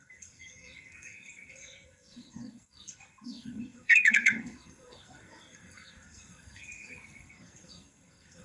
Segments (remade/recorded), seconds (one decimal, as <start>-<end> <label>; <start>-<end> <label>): 0.0-8.4 remade